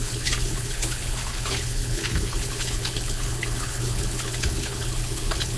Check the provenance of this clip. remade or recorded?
remade